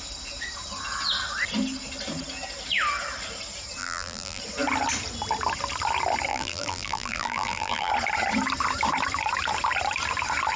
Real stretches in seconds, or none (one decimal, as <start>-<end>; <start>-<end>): 0.0-3.8; 4.4-6.3; 7.9-10.6